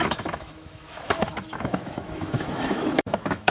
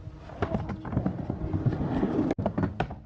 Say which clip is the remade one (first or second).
first